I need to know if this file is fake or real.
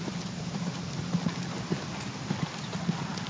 real